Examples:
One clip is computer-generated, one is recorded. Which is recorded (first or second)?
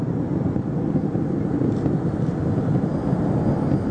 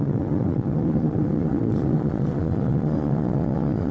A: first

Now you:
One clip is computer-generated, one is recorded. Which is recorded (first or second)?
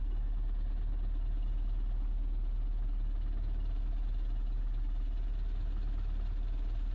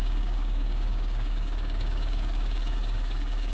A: first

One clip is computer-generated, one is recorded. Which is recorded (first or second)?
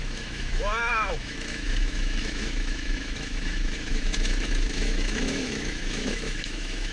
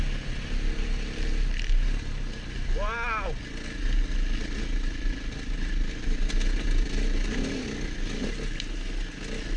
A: second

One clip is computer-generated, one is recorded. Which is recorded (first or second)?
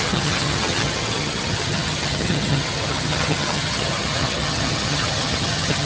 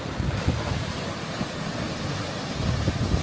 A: second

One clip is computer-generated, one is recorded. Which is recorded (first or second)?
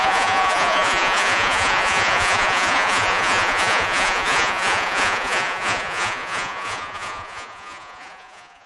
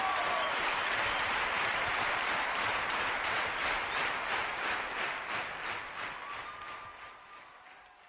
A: second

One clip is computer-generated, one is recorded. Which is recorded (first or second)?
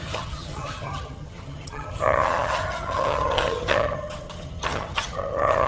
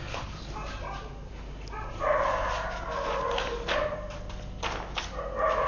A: second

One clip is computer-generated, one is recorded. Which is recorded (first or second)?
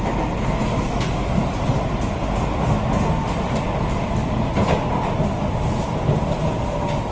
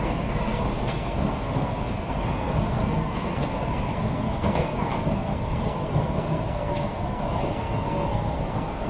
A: first